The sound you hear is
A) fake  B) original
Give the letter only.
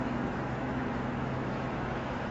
A